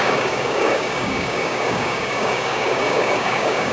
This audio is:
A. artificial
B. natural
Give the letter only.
A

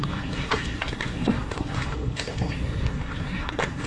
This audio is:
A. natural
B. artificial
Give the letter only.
B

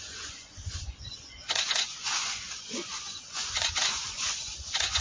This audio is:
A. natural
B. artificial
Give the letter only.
B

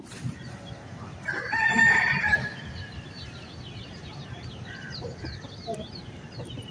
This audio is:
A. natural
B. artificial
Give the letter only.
B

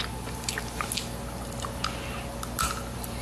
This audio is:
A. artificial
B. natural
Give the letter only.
B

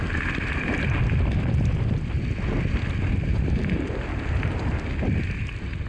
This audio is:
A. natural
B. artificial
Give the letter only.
A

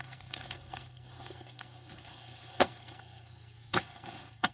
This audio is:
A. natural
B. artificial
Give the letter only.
B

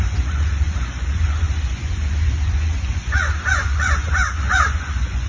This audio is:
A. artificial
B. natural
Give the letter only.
A